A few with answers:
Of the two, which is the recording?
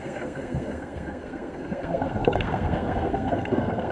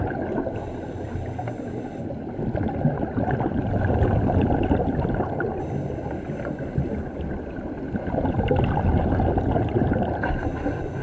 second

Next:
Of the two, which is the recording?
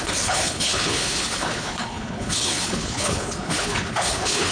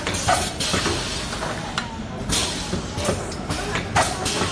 second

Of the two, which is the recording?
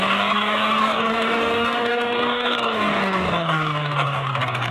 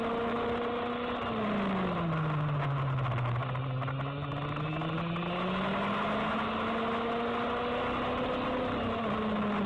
second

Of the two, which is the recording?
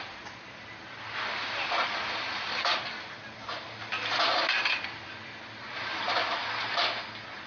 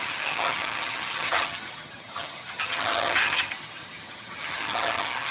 first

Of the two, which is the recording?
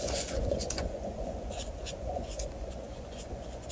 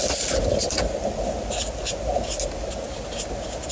second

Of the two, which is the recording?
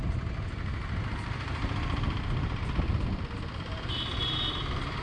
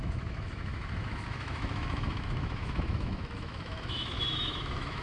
first